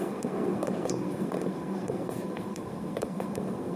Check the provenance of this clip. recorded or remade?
remade